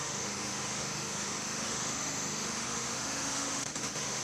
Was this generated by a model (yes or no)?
yes